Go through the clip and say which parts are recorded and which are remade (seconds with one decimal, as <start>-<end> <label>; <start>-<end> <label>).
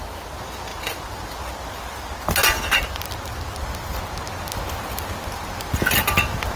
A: 0.0-6.6 recorded